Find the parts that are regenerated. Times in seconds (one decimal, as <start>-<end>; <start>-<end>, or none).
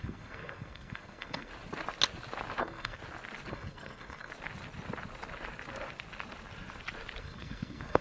0.0-1.5; 2.6-3.0; 3.5-4.3; 7.2-8.0